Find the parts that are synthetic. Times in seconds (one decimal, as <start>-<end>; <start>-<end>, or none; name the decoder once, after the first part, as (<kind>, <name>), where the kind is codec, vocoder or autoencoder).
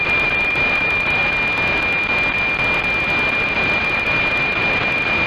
0.0-1.2 (vocoder, BigVGAN v2); 3.4-5.3